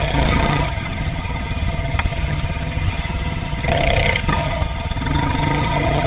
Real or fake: fake